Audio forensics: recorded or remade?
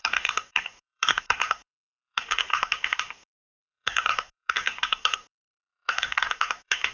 remade